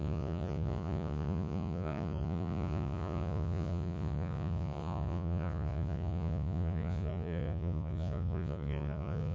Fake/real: fake